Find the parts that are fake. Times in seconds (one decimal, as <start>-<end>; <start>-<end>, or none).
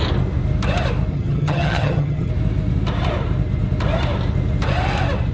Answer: 1.1-2.3